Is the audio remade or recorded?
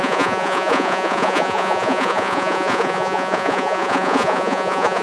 remade